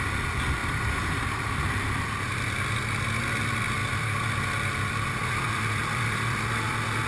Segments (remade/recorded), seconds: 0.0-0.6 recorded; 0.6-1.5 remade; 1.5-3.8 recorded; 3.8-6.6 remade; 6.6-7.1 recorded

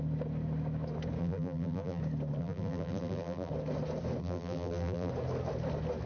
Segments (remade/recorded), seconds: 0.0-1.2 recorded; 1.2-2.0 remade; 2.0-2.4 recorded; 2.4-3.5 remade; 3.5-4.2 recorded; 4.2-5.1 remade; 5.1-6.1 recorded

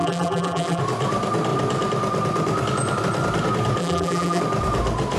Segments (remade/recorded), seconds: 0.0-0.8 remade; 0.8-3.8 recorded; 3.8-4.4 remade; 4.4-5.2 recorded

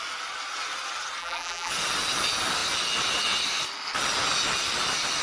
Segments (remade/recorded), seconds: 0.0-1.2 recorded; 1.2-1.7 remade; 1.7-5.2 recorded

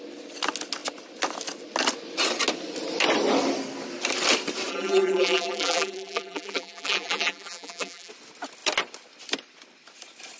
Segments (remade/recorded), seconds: 0.0-4.7 recorded; 4.7-8.1 remade; 8.1-10.4 recorded

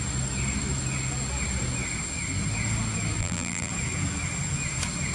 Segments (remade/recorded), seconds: 0.0-3.2 recorded; 3.2-3.7 remade; 3.7-5.1 recorded

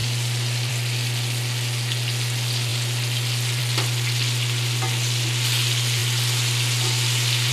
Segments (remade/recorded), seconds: 0.0-7.5 recorded

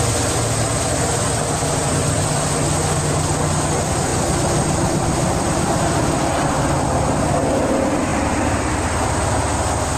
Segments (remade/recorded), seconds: 0.0-10.0 recorded